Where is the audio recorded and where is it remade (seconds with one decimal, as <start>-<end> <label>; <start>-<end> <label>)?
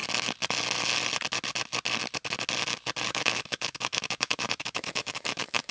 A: 0.0-3.1 recorded; 3.1-5.7 remade